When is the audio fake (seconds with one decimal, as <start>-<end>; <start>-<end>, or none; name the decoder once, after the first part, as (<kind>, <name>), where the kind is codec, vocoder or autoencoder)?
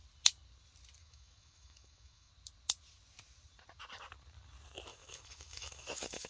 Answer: 1.0-2.3 (autoencoder, DAC-VAE); 4.9-6.3